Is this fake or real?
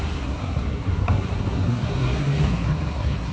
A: fake